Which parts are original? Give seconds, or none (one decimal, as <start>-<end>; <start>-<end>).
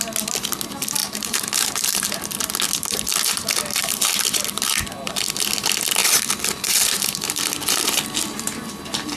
0.0-1.0; 2.2-9.2